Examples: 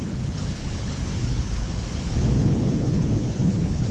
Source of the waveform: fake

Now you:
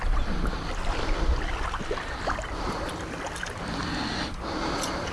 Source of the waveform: real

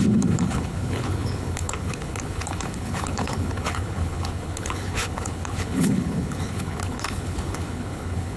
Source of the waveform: fake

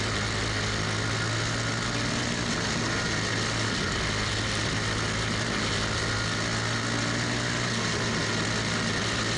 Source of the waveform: real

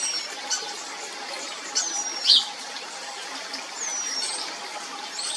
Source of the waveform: real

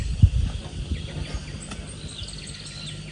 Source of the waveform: real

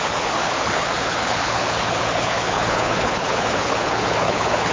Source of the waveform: fake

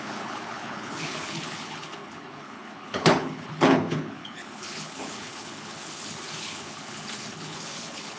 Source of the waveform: fake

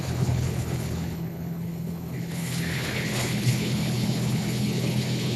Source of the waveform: fake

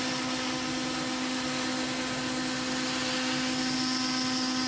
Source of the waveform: real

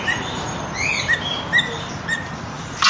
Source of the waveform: real